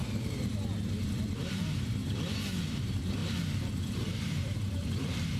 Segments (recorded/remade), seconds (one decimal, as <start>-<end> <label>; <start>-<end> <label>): 0.0-3.2 remade; 3.2-3.7 recorded; 3.7-5.4 remade